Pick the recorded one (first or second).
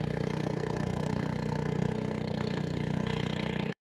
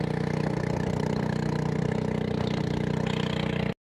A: second